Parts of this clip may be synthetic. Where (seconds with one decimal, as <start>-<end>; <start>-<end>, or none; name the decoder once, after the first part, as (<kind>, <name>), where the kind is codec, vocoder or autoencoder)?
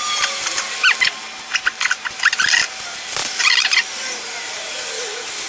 none